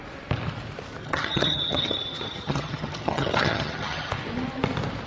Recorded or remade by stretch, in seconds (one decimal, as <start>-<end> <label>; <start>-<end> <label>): 0.0-1.0 recorded; 1.0-4.1 remade; 4.1-5.1 recorded